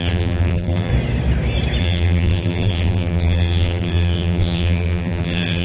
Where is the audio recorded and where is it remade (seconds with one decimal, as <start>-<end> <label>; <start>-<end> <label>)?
0.0-0.9 remade; 0.9-1.8 recorded; 1.8-5.6 remade